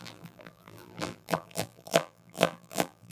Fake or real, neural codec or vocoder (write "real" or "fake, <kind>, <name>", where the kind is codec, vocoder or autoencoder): fake, vocoder, BigVGAN v2